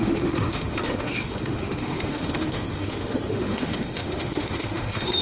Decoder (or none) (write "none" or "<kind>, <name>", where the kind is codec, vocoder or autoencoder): autoencoder, DAC-VAE